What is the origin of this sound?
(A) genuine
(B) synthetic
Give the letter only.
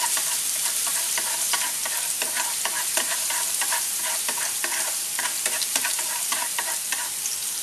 B